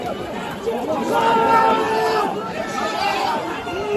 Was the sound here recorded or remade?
remade